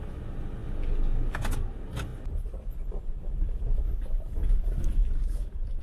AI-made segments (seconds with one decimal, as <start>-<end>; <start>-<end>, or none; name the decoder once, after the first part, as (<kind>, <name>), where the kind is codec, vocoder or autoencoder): 2.1-5.8 (vocoder, BigVGAN v2)